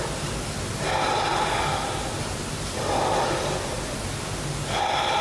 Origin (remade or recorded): recorded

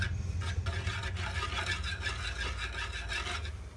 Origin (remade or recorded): recorded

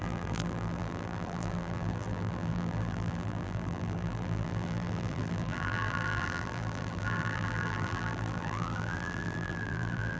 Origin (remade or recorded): remade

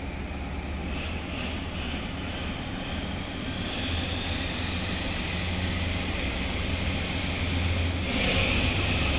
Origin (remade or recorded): recorded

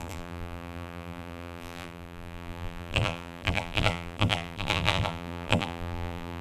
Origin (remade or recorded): remade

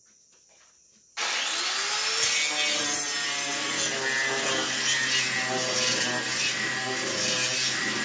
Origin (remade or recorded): recorded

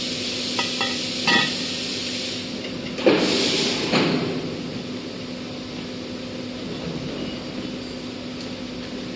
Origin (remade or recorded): recorded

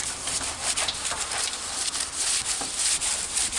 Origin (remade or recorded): remade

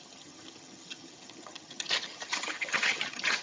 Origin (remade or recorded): remade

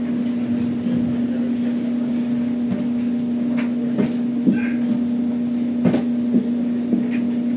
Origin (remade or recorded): recorded